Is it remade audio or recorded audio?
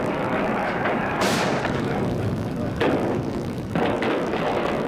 remade